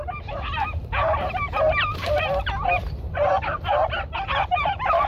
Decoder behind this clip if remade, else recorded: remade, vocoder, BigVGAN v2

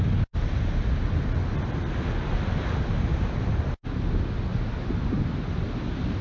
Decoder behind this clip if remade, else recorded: recorded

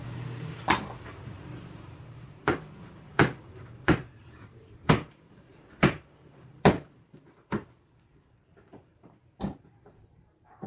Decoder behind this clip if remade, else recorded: remade, vocoder, BigVGAN v2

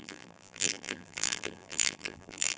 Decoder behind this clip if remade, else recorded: remade, vocoder, BigVGAN v2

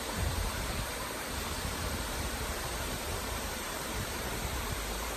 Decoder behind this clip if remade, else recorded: remade, vocoder, BigVGAN v2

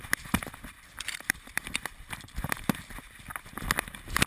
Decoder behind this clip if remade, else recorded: recorded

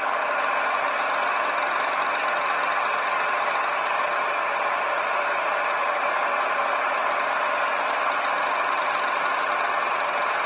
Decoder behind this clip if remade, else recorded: recorded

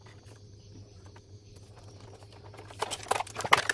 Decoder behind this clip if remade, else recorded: recorded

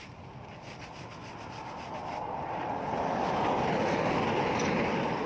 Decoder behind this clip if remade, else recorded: recorded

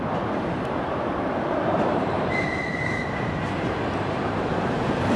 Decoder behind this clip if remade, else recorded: remade, vocoder, BigVGAN v2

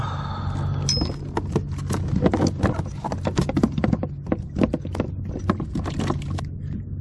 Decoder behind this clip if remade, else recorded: recorded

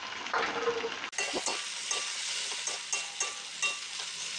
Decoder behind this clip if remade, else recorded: recorded